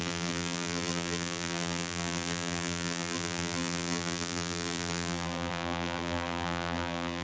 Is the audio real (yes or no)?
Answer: no